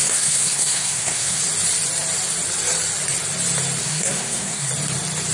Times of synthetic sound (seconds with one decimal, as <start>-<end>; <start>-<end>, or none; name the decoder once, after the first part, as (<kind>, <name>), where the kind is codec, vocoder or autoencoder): 0.0-1.4 (codec, SNAC); 3.8-4.7